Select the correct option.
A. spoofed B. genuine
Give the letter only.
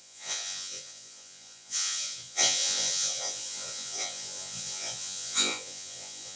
A